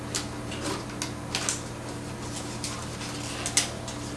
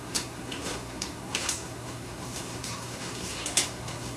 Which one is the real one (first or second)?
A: first